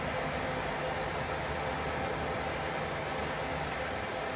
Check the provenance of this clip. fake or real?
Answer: real